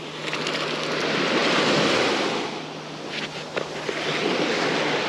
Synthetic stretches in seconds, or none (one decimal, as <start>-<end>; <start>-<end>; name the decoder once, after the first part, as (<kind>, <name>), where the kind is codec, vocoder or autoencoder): none